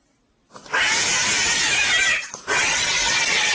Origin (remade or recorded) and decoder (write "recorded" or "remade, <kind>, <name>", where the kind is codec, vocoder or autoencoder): recorded